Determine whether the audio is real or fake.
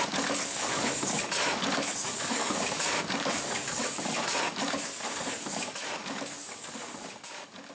fake